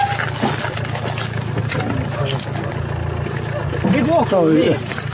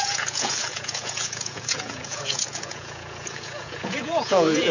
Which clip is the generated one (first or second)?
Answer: second